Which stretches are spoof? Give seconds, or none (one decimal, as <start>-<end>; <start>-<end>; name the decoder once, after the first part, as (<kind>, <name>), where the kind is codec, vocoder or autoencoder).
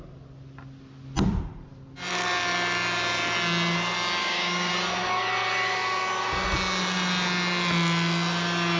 4.2-4.7 (codec, DAC)